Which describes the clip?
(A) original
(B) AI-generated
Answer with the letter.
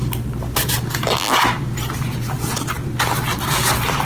A